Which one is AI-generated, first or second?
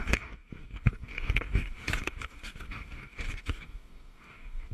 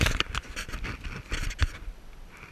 first